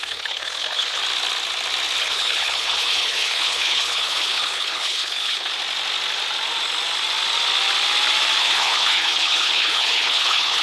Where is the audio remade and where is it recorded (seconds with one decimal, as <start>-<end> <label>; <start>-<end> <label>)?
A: 0.0-1.0 remade; 1.0-2.0 recorded; 2.0-5.5 remade; 5.5-8.4 recorded; 8.4-10.6 remade